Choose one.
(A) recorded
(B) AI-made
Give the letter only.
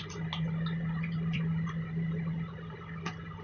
A